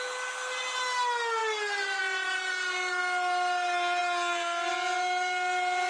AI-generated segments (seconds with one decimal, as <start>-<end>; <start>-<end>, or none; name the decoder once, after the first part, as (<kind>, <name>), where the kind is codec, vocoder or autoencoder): none